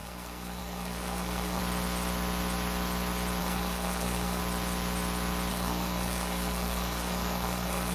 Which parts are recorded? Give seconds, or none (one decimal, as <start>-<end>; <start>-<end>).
1.6-3.4; 4.4-5.5